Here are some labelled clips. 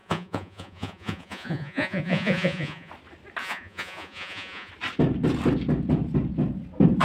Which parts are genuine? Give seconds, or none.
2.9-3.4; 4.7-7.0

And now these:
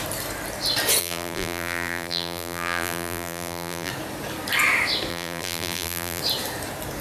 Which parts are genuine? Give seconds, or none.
0.0-1.0; 3.9-5.1; 6.2-7.0

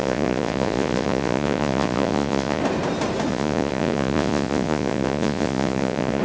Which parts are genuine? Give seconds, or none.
2.6-3.3